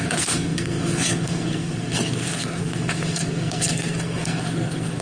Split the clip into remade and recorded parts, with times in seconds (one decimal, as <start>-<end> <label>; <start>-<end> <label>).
0.0-5.0 remade